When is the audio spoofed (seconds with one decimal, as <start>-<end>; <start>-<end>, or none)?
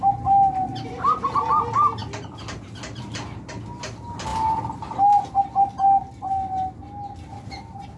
none